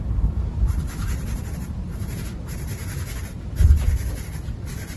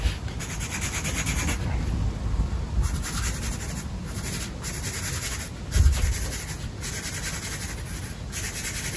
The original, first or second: second